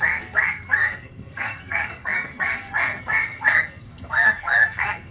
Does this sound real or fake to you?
fake